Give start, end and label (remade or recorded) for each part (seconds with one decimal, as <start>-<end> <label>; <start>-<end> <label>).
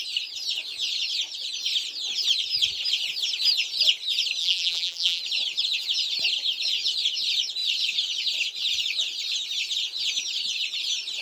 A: 0.0-4.4 recorded; 4.4-5.2 remade; 5.2-11.2 recorded